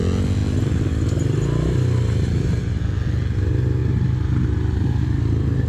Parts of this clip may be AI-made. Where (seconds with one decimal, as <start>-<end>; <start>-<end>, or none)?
none